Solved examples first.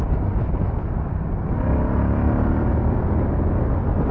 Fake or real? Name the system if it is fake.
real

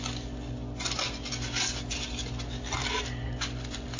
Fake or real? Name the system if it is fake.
real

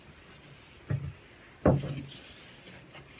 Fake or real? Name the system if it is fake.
real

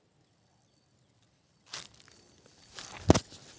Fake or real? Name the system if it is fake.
real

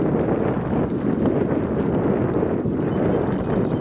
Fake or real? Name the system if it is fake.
real